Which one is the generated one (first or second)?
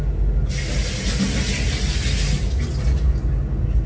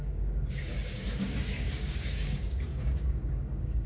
second